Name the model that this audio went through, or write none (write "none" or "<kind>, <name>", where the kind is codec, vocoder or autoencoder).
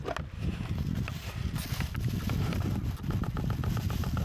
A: none